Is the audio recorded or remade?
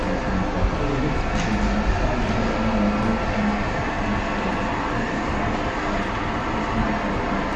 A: recorded